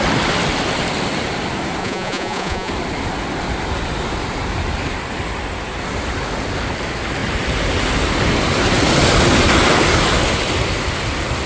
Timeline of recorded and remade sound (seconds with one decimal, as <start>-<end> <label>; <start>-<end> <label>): 0.0-1.8 recorded; 1.8-2.7 remade; 2.7-11.5 recorded

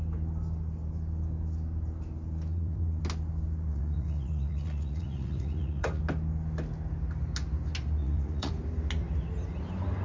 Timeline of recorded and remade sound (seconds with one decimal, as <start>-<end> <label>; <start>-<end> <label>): 0.0-2.5 recorded; 2.5-3.0 remade; 3.0-3.7 recorded; 3.7-6.0 remade; 6.0-8.0 recorded; 8.0-8.5 remade; 8.5-10.0 recorded